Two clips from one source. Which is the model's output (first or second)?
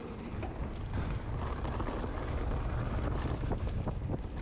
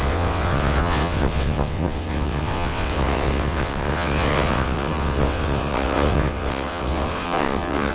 second